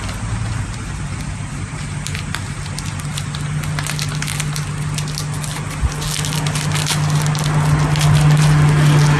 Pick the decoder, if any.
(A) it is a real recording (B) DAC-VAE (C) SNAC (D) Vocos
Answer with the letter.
A